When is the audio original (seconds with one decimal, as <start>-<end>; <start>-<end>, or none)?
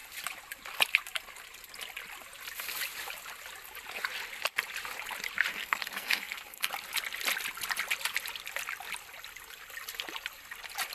0.0-5.5; 6.7-10.9